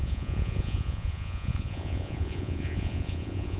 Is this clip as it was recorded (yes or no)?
no